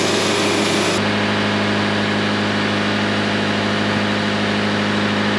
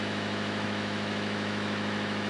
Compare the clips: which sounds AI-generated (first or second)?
second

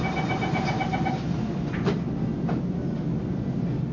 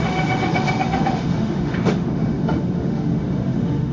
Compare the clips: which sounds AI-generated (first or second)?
second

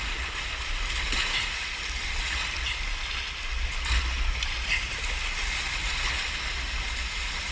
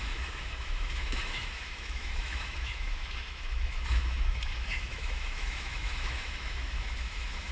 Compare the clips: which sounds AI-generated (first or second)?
second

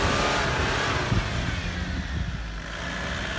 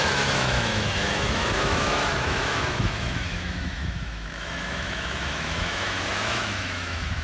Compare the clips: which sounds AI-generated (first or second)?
second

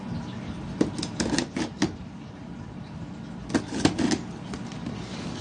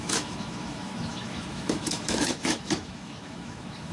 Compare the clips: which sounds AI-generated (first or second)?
second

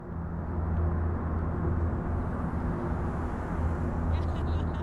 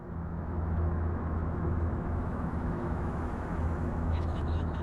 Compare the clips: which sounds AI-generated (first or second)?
second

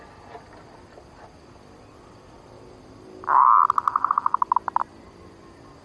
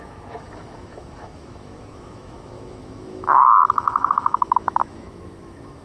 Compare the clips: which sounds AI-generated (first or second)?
second